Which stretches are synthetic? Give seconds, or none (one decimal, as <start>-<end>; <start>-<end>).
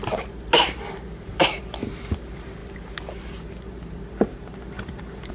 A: none